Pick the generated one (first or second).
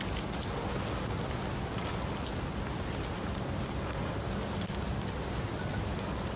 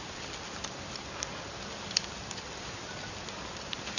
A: second